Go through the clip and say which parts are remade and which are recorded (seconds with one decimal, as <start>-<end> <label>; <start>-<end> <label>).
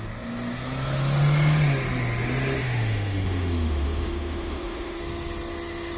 0.0-2.6 recorded; 2.6-5.0 remade; 5.0-6.0 recorded